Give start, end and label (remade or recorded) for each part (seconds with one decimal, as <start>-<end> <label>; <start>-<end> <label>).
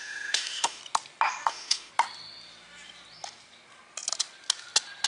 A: 0.0-0.8 remade; 0.8-1.5 recorded; 1.5-1.9 remade; 1.9-5.1 recorded